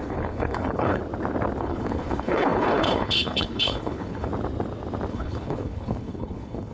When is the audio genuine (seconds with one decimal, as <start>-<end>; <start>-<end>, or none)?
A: 1.0-1.6; 4.3-5.1